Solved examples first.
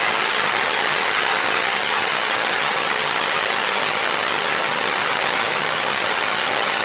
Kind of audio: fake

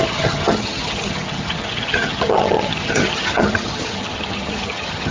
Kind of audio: fake